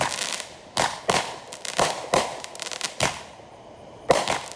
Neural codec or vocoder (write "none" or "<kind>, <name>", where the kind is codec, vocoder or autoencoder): none